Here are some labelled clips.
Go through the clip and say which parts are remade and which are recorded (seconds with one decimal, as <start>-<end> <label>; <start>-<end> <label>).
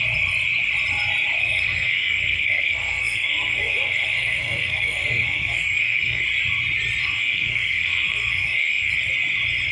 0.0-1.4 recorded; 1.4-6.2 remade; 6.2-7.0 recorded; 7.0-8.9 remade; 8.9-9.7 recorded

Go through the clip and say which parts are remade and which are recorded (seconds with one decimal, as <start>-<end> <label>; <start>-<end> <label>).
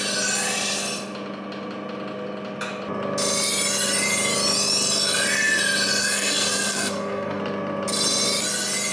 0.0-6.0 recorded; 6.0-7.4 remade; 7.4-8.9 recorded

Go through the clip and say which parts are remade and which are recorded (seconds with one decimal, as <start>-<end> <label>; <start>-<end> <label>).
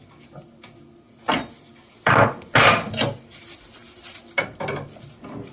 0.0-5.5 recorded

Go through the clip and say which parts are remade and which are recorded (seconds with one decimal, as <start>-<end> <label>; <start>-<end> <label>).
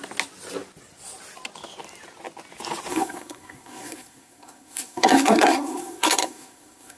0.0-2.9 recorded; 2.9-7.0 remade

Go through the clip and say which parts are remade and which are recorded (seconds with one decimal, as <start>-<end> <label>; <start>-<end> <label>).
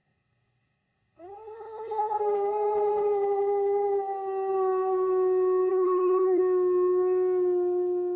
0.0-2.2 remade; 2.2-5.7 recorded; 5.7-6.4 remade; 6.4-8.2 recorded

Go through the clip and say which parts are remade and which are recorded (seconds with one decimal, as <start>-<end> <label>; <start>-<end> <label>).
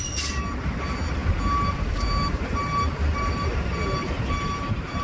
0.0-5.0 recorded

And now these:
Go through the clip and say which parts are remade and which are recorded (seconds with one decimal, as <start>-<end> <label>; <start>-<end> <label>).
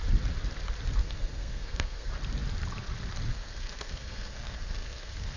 0.0-1.0 recorded; 1.0-2.1 remade; 2.1-3.3 recorded; 3.3-5.4 remade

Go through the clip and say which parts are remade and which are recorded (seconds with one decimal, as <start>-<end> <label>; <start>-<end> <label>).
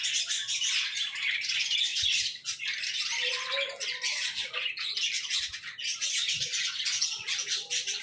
0.0-8.0 recorded